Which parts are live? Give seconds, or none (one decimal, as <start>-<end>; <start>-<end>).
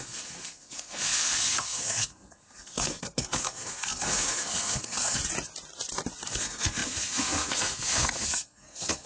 5.2-6.3